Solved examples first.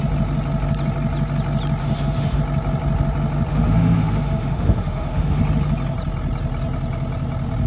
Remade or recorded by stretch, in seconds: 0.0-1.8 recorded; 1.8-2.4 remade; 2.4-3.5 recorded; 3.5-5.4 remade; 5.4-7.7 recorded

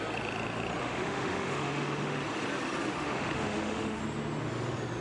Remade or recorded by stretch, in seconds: 0.0-0.8 recorded; 0.8-2.2 remade; 2.2-2.9 recorded; 2.9-4.0 remade; 4.0-5.0 recorded

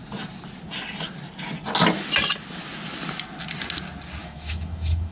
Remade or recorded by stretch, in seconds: 0.0-4.2 recorded; 4.2-5.1 remade

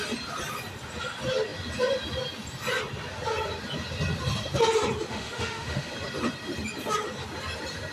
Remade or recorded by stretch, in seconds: 0.0-5.1 recorded; 5.1-5.9 remade; 5.9-7.9 recorded

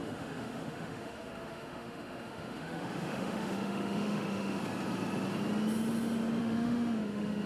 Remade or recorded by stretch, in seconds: 0.0-4.6 remade; 4.6-6.4 recorded; 6.4-7.5 remade

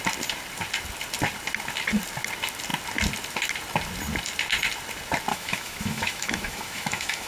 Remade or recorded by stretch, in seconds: 0.0-5.3 recorded; 5.3-7.3 remade

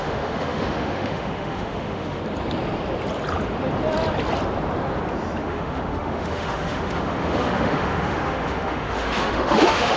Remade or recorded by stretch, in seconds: 0.0-2.2 remade; 2.2-5.4 recorded; 5.4-10.0 remade

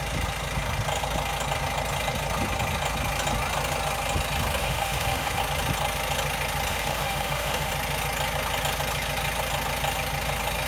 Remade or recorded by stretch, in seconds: 0.0-4.6 recorded; 4.6-5.4 remade; 5.4-6.7 recorded; 6.7-7.7 remade; 7.7-10.7 recorded